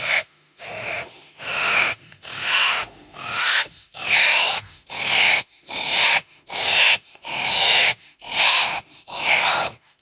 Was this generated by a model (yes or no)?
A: yes